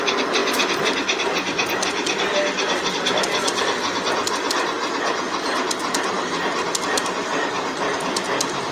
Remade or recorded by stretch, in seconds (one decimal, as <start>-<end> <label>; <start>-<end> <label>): 0.0-8.7 recorded